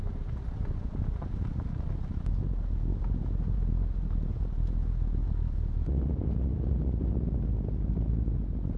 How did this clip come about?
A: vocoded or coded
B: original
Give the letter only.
B